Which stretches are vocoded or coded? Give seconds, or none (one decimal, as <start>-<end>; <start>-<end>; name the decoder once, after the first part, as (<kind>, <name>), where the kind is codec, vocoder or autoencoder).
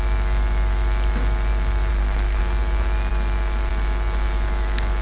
1.9-2.4 (codec, SNAC)